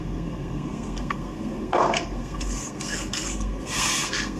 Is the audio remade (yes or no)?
yes